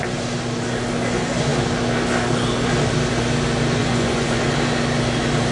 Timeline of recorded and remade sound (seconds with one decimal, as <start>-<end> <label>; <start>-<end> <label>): 0.0-3.8 recorded; 3.8-4.4 remade; 4.4-5.5 recorded